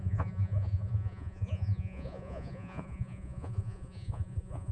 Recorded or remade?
remade